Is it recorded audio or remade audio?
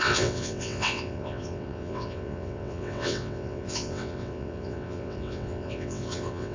remade